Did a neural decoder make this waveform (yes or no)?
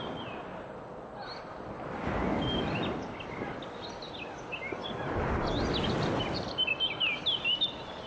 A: no